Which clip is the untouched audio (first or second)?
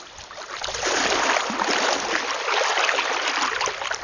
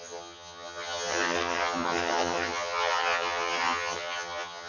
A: first